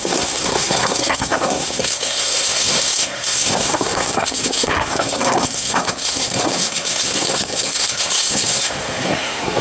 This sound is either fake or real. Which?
fake